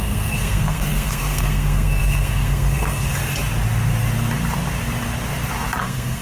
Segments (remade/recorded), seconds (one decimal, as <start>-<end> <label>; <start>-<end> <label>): 0.0-3.1 remade; 3.1-5.8 recorded; 5.8-6.2 remade